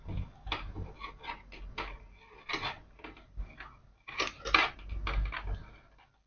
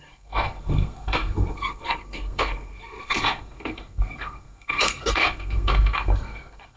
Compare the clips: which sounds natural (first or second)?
first